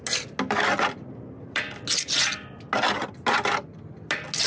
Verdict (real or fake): real